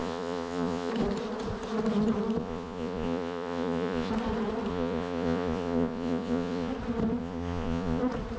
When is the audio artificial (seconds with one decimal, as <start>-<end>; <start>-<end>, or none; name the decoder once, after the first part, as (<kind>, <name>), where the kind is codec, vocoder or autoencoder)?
0.0-0.9 (vocoder, Vocos); 2.4-4.1; 4.7-6.7; 7.2-8.0